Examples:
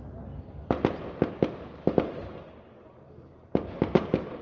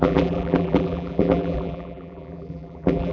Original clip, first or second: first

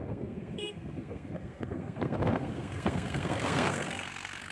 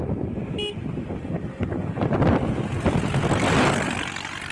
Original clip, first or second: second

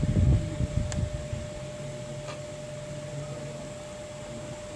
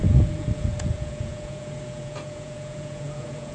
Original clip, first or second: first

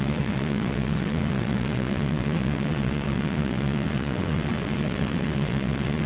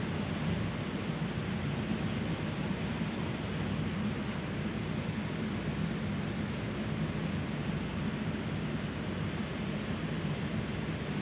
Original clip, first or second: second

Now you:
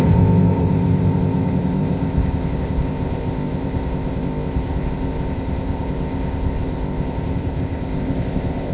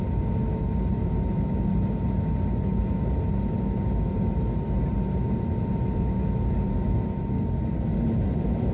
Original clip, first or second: second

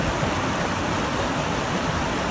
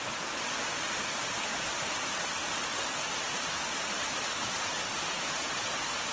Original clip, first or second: second